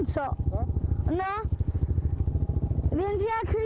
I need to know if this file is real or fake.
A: real